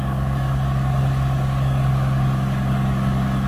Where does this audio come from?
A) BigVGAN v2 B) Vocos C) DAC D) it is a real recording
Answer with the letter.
C